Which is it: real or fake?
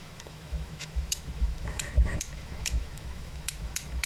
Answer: fake